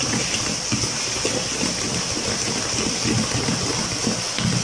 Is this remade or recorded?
recorded